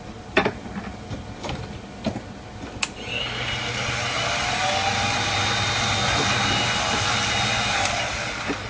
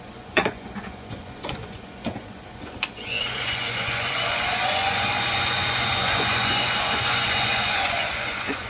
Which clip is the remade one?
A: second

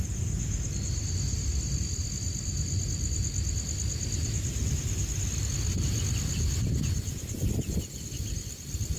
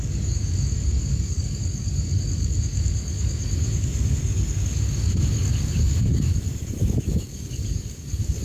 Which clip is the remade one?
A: second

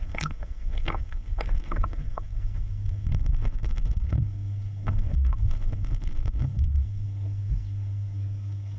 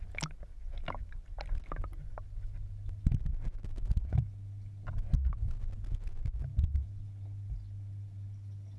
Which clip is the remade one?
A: first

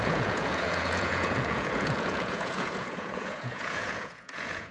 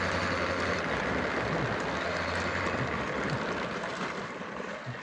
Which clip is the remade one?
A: first